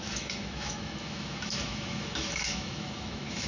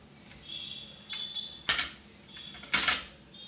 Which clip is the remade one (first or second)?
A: first